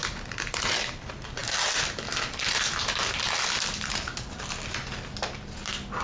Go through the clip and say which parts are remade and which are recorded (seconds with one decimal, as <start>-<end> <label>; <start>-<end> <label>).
0.0-6.0 recorded